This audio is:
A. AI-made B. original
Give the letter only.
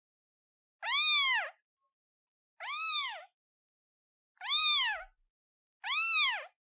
B